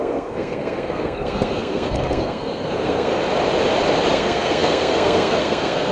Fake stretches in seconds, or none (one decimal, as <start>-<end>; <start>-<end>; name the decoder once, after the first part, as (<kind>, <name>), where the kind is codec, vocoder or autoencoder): 0.0-3.1 (codec, SNAC); 4.1-5.9

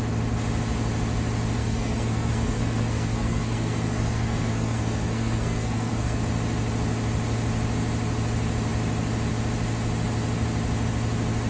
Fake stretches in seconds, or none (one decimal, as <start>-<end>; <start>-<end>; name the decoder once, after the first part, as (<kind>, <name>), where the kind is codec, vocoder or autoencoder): 1.6-6.2 (codec, SNAC)

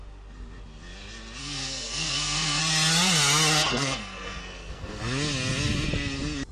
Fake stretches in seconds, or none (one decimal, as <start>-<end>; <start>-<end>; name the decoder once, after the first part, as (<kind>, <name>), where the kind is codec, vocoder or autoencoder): 1.4-2.6 (codec, SNAC); 3.7-5.0

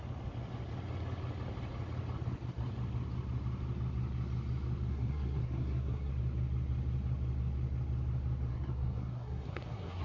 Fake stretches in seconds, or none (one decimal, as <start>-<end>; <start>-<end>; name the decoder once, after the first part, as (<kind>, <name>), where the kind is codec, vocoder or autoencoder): 4.9-6.1 (codec, SNAC); 8.5-10.0